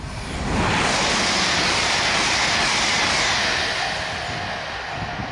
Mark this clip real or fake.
real